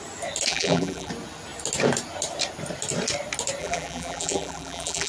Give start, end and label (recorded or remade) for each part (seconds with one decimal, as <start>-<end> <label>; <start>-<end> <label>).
0.0-0.5 recorded; 0.5-1.1 remade; 1.1-3.6 recorded; 3.6-5.1 remade